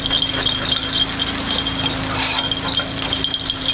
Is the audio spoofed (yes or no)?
no